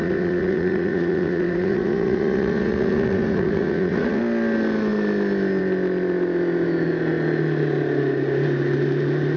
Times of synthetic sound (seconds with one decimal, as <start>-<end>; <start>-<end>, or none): 0.0-4.2